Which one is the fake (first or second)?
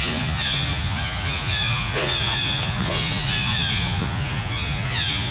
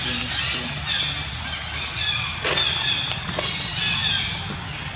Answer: first